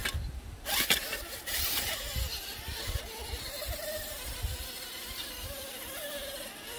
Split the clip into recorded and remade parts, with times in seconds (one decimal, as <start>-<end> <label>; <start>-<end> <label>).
0.0-6.8 recorded